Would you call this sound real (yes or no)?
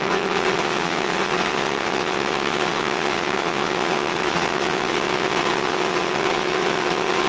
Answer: no